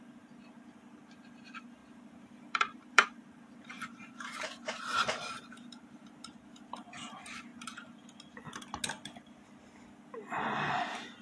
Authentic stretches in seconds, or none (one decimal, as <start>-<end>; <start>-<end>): 0.0-1.8; 6.1-11.2